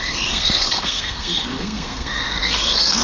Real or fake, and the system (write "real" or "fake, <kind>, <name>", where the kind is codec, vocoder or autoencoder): fake, codec, SNAC